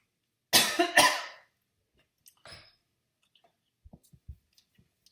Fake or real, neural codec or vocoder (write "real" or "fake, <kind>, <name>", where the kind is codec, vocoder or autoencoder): real